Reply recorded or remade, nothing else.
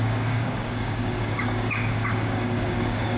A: remade